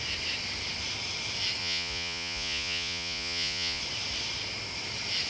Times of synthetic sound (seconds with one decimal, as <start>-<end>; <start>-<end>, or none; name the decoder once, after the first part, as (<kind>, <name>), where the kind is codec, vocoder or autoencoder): 1.6-3.8 (vocoder, Vocos)